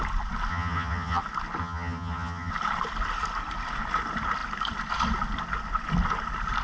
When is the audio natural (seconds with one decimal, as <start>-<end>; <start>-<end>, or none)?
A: 0.0-0.5; 1.2-1.6; 2.5-6.6